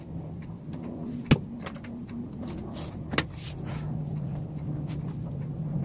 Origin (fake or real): real